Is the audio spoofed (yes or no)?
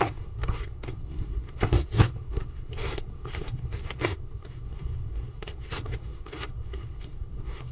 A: yes